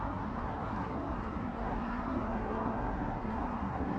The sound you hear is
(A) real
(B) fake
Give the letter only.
B